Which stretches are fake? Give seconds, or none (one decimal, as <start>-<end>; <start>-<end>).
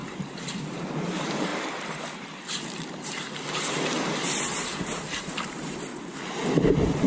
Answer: 0.0-1.5; 5.2-5.9